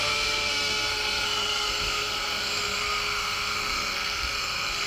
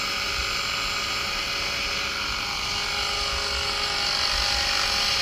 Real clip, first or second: second